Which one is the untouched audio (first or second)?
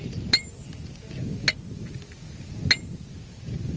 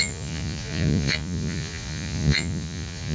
first